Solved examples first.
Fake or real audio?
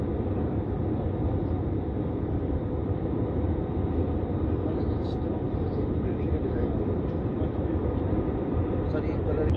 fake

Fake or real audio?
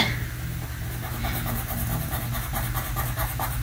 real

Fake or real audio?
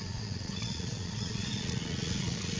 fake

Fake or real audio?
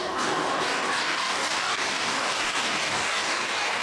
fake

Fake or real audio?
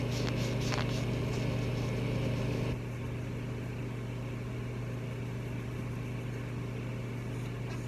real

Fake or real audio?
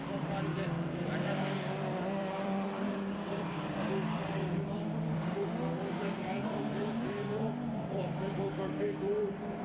fake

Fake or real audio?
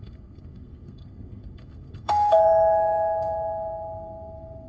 fake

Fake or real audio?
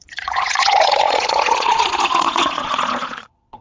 fake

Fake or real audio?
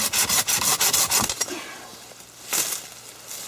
real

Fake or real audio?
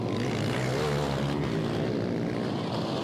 real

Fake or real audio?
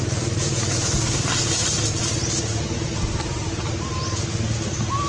real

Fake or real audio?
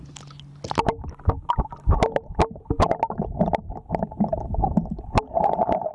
real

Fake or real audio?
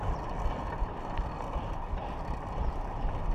real